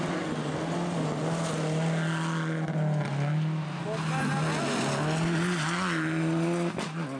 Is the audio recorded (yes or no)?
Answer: yes